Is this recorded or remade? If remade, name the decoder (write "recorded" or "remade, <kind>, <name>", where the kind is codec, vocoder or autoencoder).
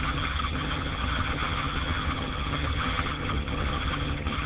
remade, vocoder, HiFi-GAN